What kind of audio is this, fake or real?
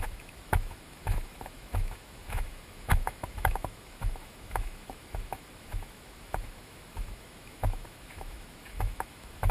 fake